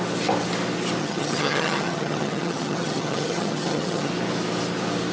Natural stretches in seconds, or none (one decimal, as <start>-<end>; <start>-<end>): 0.0-1.0; 4.1-5.1